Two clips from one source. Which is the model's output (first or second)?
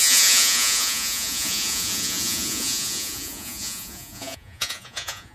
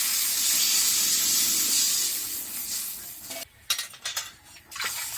first